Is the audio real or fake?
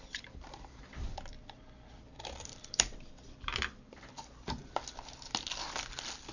fake